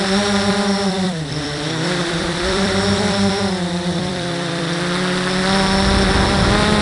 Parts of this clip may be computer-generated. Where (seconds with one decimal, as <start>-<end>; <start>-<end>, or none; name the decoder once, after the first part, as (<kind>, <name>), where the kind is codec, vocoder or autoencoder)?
0.5-4.6 (vocoder, BigVGAN v2)